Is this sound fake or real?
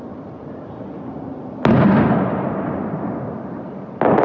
real